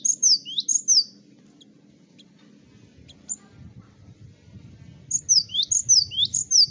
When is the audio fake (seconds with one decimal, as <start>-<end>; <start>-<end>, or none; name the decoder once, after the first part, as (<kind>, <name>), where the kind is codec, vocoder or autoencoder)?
none